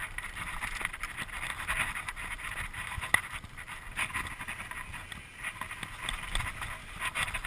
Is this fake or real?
real